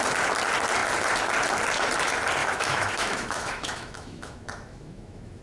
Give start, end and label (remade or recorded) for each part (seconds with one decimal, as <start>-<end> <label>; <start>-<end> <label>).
0.0-2.4 recorded; 2.4-5.4 remade